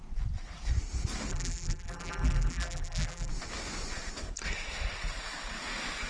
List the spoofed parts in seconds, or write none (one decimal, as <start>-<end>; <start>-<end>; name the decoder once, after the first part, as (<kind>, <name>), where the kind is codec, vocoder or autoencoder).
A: 1.3-3.3 (vocoder, BigVGAN v2)

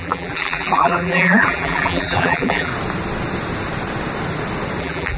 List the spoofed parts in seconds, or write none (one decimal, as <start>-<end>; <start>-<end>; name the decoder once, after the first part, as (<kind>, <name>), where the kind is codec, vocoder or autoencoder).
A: 0.0-2.7 (vocoder, BigVGAN v2); 4.8-5.2

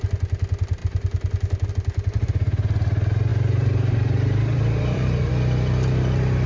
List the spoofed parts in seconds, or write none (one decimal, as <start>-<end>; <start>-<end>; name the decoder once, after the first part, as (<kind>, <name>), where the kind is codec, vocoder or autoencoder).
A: 3.3-5.3 (vocoder, BigVGAN v2)

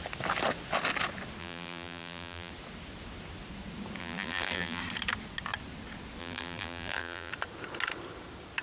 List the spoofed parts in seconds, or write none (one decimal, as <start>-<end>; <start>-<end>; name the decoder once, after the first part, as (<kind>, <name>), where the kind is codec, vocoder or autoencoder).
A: 1.4-2.5 (vocoder, BigVGAN v2); 4.0-4.8; 6.2-7.3

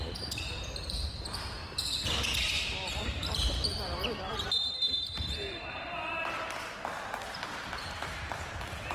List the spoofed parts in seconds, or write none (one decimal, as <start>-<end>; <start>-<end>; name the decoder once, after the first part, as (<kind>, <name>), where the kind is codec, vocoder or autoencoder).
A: 0.0-1.6 (vocoder, BigVGAN v2); 2.9-3.7; 4.3-8.9

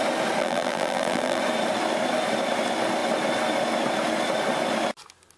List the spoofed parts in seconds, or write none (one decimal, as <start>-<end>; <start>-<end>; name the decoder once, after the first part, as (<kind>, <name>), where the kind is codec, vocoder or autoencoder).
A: 0.4-1.4 (vocoder, BigVGAN v2)

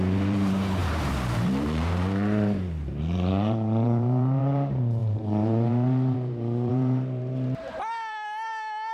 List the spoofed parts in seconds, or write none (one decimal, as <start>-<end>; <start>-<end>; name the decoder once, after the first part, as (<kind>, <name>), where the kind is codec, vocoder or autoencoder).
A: 0.0-8.9 (vocoder, BigVGAN v2)

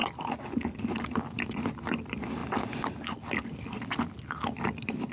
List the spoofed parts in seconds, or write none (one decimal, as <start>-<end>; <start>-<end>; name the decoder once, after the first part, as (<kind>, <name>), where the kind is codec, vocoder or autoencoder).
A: 0.8-5.1 (vocoder, BigVGAN v2)